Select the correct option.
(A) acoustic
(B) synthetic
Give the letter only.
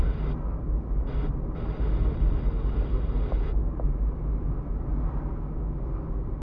A